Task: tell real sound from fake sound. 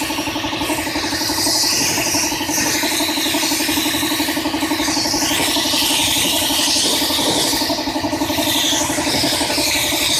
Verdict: real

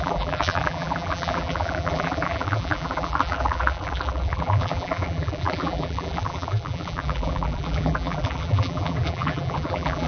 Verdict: fake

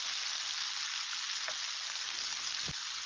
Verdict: real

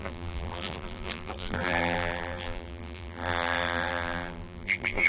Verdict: fake